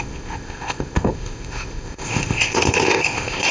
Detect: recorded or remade remade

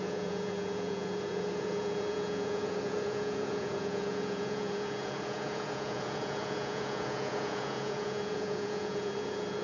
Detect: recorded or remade remade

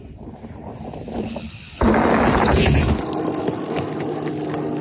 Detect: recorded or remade recorded